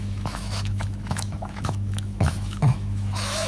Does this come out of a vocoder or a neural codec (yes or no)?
yes